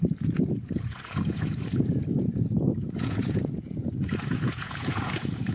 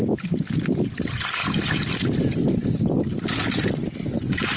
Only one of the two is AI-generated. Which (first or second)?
first